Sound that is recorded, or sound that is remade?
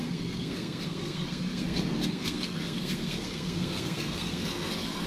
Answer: remade